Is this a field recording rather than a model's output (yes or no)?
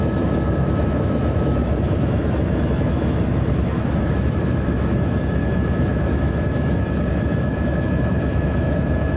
no